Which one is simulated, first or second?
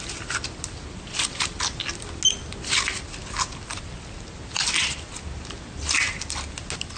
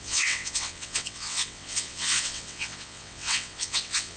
second